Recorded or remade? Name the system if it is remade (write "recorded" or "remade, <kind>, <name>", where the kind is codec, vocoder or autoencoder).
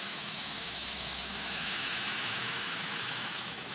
remade, autoencoder, DAC-VAE